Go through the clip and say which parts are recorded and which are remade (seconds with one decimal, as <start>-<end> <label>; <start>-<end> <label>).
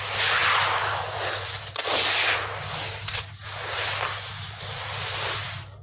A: 0.0-5.8 recorded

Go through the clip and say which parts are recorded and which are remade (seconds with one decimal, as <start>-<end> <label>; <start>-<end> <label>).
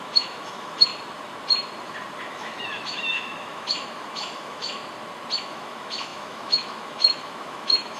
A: 0.0-0.9 remade; 0.9-2.2 recorded; 2.2-4.8 remade; 4.8-5.4 recorded; 5.4-8.0 remade